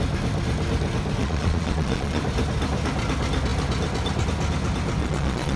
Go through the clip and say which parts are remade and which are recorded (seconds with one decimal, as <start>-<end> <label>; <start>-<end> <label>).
0.0-1.2 recorded; 1.2-2.2 remade; 2.2-5.0 recorded; 5.0-5.6 remade